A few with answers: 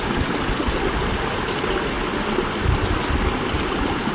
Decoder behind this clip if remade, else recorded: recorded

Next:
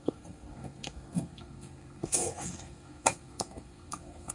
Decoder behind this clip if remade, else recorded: remade, codec, SNAC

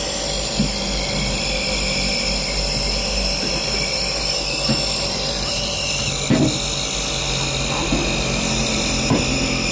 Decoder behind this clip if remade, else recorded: recorded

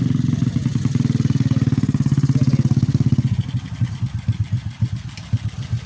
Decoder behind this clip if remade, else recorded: recorded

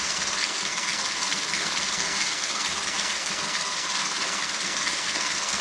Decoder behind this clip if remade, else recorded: remade, codec, SNAC